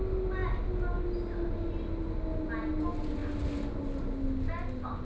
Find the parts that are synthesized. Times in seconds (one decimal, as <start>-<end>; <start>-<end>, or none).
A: none